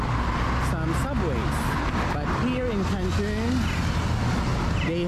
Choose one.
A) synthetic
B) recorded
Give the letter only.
B